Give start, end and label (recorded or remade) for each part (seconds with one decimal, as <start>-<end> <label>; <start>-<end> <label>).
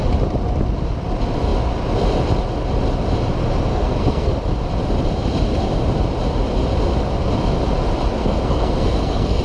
0.0-3.7 recorded; 3.7-4.3 remade; 4.3-8.2 recorded; 8.2-9.4 remade